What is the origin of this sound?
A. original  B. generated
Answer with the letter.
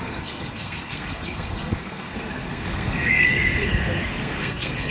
B